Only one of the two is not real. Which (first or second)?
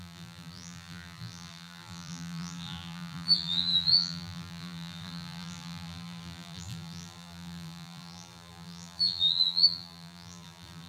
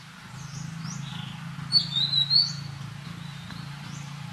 first